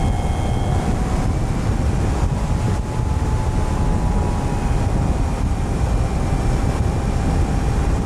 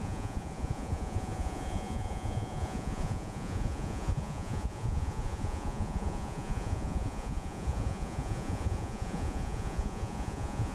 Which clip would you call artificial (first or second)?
second